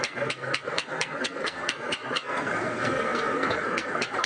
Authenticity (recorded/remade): remade